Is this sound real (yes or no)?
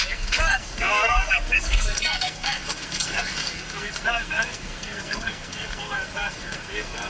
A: no